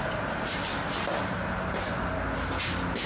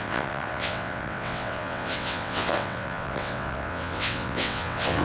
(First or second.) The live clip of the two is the first